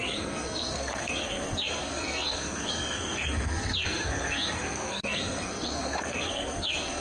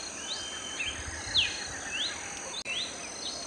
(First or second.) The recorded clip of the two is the second